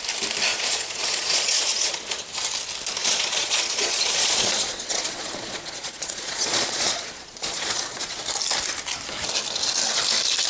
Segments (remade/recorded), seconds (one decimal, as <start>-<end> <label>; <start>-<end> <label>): 0.0-0.5 recorded; 0.5-2.0 remade; 2.0-3.0 recorded; 3.0-8.2 remade; 8.2-10.5 recorded